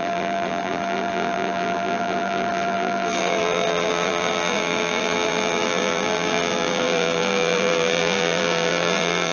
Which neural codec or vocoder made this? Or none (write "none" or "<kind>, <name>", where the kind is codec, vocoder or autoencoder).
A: vocoder, BigVGAN v2